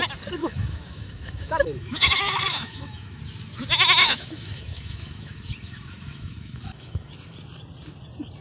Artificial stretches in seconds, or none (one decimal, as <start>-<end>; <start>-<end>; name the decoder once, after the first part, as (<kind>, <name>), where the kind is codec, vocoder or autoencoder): 0.4-3.2 (autoencoder, DAC-VAE); 4.0-7.1